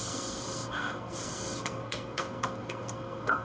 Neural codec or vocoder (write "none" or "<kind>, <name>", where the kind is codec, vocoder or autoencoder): codec, SNAC